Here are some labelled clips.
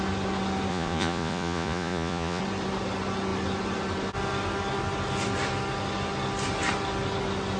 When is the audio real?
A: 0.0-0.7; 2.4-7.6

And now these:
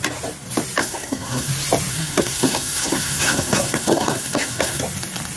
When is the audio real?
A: 0.0-0.8; 1.5-1.9; 4.8-5.4